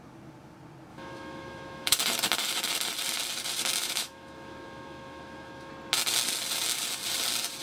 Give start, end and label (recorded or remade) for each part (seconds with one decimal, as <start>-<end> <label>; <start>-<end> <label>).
0.0-0.9 recorded; 0.9-2.0 remade; 2.0-3.8 recorded; 3.8-5.7 remade; 5.7-7.6 recorded